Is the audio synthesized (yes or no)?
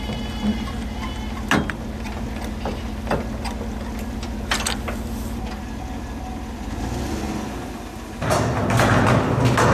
no